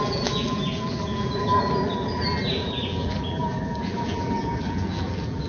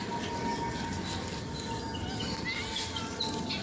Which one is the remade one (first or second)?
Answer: first